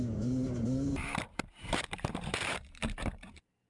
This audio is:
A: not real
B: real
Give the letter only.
A